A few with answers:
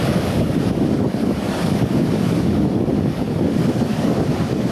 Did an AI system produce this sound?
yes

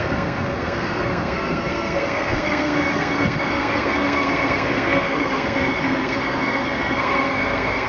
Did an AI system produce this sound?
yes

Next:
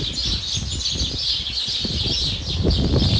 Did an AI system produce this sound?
no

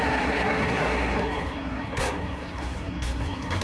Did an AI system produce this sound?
yes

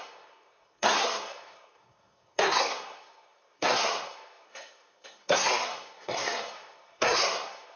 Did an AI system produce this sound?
yes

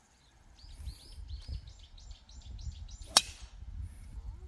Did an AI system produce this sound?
no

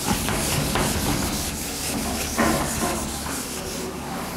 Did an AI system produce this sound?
yes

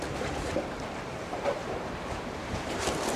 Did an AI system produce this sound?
yes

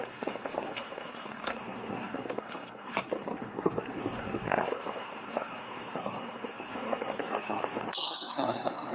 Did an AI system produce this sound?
yes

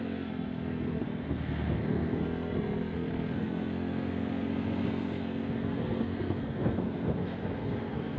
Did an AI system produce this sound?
yes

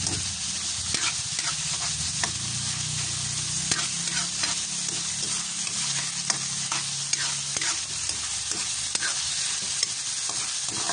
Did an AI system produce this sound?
no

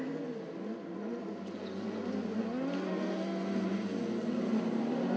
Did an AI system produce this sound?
no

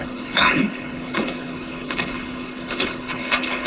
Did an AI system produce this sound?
yes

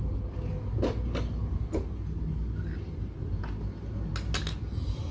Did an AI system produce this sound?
no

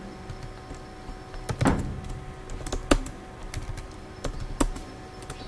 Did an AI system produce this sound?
no